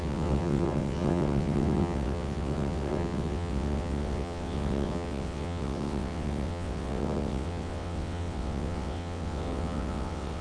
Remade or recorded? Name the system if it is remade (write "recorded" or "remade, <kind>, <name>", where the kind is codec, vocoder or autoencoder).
remade, vocoder, WaveNeXt